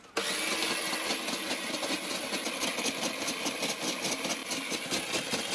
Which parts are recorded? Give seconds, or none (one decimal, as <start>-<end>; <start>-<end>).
0.0-5.5